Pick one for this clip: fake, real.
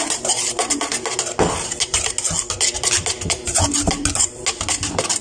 real